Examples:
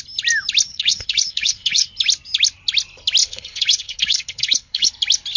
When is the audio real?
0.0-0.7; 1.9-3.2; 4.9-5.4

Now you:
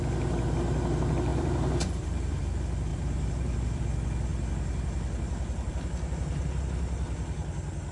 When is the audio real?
0.0-1.3; 2.4-2.9; 3.8-7.9

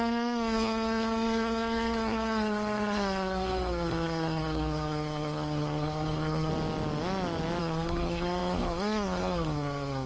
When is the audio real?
6.5-7.6

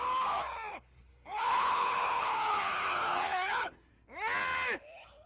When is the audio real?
0.0-0.7; 3.9-5.3

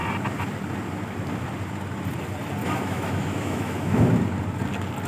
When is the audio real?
0.0-2.6; 4.1-5.1

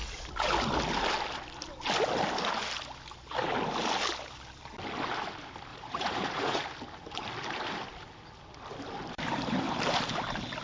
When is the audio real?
0.0-5.7; 6.6-10.6

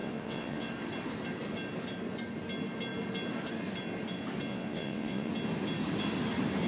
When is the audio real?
0.7-4.5; 5.3-6.7

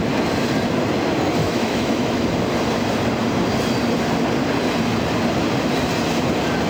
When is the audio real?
0.0-1.4; 2.2-6.7